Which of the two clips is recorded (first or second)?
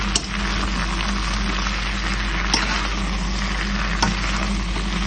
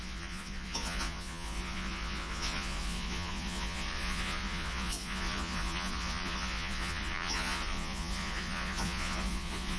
first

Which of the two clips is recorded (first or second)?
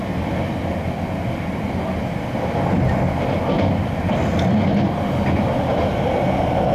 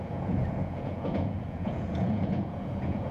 first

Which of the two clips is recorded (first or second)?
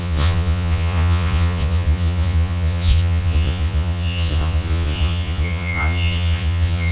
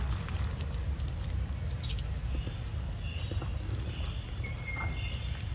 second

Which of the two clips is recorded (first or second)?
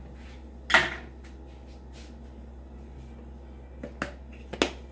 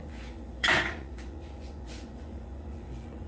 first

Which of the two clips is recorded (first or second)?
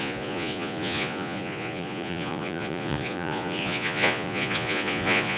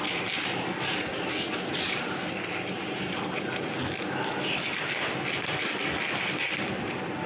second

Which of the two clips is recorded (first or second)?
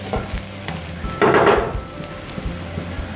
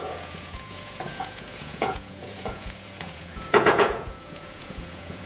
first